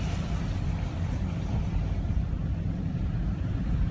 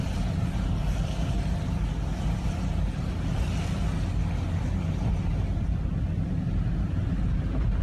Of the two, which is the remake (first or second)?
first